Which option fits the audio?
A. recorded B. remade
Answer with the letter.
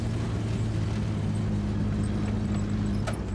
A